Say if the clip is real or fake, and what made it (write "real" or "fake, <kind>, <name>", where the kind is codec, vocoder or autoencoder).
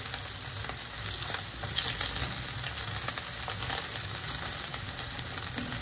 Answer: real